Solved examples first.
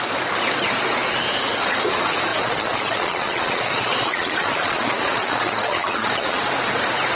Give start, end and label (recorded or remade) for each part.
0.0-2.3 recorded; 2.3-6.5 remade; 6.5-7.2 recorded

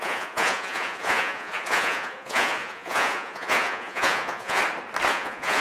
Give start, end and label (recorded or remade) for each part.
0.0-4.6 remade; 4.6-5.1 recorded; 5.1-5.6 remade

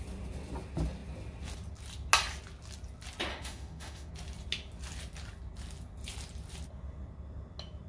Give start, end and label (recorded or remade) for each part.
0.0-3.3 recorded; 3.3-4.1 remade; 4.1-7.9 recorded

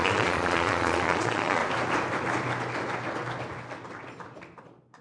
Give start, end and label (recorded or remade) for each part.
0.0-1.6 remade; 1.6-4.6 recorded; 4.6-5.0 remade